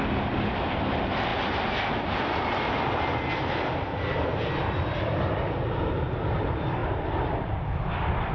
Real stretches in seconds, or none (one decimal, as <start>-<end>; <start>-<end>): 0.0-8.3